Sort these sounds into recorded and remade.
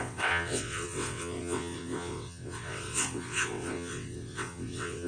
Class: remade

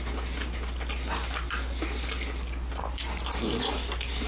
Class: recorded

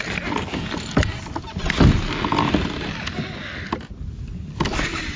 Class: recorded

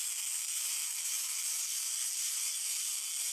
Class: remade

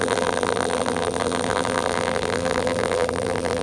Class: remade